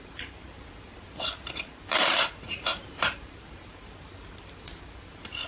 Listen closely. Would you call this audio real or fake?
fake